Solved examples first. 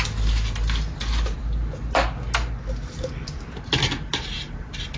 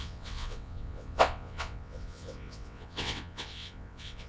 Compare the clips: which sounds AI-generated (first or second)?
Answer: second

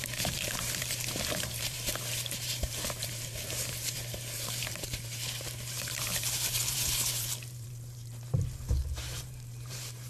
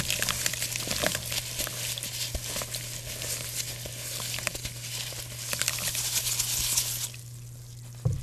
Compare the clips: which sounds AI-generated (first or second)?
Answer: first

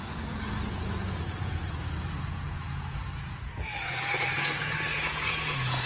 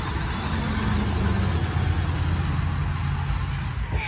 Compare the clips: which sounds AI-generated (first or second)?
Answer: first